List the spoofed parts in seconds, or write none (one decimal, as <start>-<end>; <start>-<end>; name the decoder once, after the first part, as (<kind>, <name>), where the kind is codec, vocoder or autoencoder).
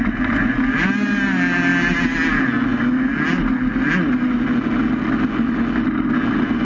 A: none